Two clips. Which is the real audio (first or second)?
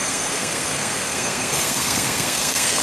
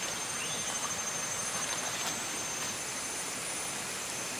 second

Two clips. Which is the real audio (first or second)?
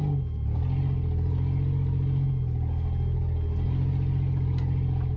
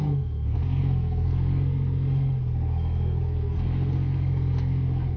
first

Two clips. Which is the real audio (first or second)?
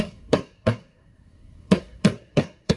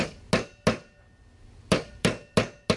second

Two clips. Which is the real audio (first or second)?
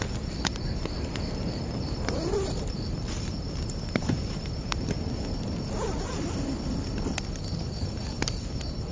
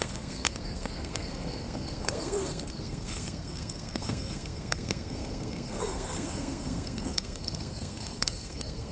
first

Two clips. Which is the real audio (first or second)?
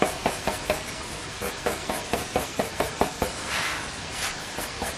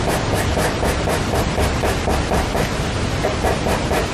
second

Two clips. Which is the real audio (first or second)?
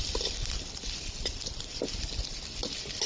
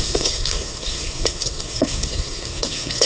first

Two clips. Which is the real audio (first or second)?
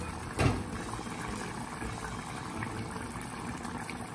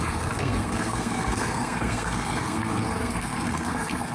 first